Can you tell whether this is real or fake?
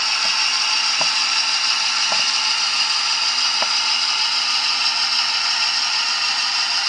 real